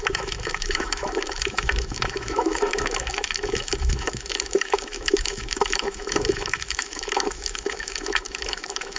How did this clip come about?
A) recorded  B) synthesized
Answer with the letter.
B